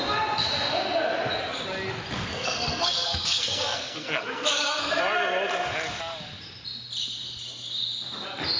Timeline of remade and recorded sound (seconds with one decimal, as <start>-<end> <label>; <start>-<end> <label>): 0.0-2.3 recorded; 2.3-5.0 remade; 5.0-8.6 recorded